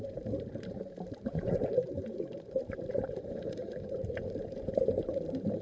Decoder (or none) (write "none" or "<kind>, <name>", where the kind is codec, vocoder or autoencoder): vocoder, BigVGAN v2